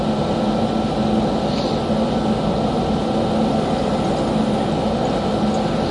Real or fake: real